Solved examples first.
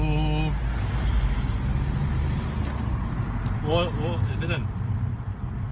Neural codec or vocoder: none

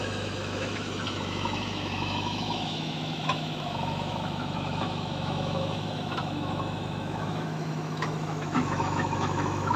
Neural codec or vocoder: autoencoder, DAC-VAE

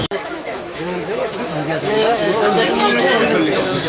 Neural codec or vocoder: autoencoder, DAC-VAE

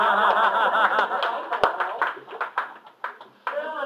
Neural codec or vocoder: none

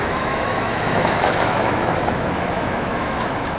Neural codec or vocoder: autoencoder, DAC-VAE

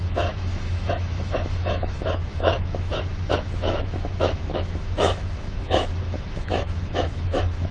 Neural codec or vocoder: autoencoder, DAC-VAE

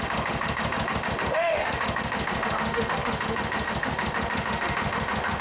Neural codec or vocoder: autoencoder, DAC-VAE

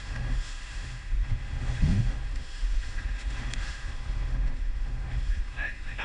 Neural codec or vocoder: autoencoder, DAC-VAE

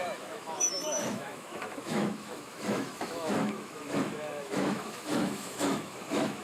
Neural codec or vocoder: autoencoder, DAC-VAE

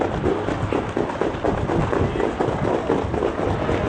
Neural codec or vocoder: none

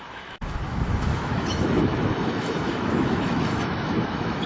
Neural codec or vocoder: autoencoder, DAC-VAE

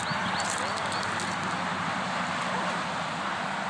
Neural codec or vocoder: none